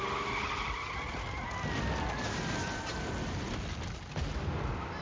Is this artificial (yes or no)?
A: no